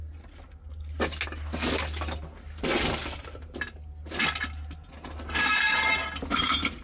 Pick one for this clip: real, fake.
real